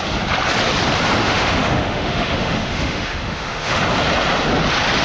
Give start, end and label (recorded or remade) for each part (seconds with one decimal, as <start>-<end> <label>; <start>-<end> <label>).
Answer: 0.0-1.2 recorded; 1.2-3.8 remade; 3.8-5.0 recorded